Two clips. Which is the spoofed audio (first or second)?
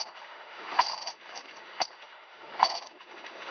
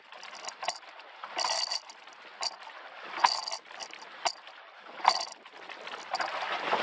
first